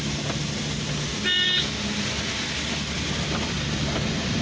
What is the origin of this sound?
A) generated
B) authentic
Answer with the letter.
B